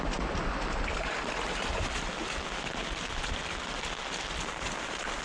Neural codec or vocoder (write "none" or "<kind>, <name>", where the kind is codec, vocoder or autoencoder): none